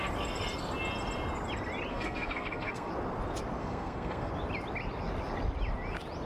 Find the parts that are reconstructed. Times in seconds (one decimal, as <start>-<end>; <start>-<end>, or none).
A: 1.9-2.9; 3.6-4.3